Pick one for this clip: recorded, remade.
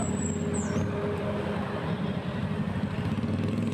recorded